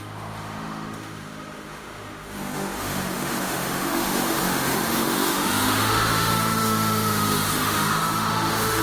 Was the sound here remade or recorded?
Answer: remade